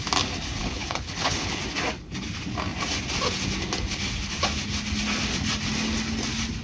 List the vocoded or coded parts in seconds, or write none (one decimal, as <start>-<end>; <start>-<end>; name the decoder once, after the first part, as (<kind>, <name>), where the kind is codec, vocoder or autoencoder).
0.6-1.6 (codec, HILCodec)

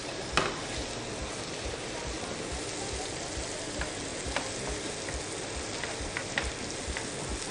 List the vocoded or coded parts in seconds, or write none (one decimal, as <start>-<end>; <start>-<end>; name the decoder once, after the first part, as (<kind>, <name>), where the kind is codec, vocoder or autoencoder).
none

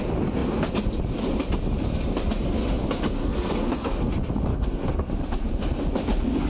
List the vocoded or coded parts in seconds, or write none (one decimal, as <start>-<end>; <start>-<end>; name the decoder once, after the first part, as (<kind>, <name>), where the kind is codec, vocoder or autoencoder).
3.2-4.1 (codec, SNAC); 4.5-5.1